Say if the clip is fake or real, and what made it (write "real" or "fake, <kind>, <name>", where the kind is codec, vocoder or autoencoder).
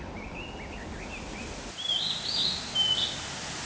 real